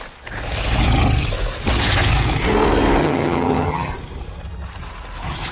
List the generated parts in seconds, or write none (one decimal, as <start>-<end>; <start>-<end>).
3.0-3.9